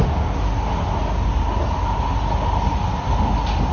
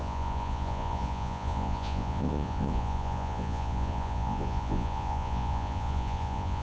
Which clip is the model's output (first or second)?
second